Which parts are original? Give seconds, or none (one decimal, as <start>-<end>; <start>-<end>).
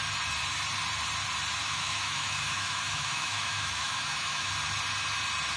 0.0-1.6; 4.5-5.6